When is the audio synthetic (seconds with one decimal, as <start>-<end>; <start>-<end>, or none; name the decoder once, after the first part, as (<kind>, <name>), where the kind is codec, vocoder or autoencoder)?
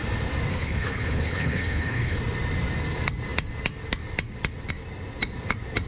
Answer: 0.5-2.2 (codec, HILCodec)